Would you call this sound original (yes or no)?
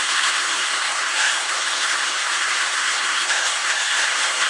no